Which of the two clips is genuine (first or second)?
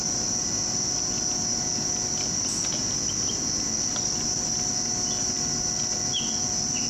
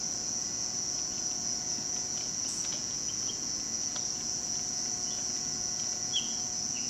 first